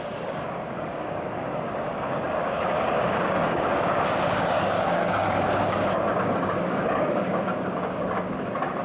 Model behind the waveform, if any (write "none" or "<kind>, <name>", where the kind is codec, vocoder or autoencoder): codec, DAC